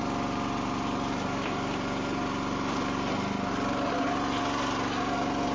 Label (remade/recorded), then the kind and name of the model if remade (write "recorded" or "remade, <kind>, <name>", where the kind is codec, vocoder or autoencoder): recorded